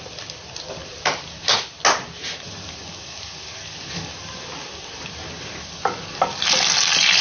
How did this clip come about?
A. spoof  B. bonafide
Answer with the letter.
B